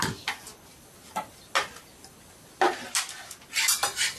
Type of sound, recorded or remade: recorded